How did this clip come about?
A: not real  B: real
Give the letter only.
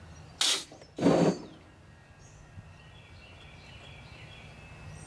B